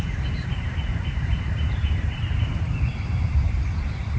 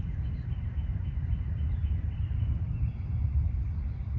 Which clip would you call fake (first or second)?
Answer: first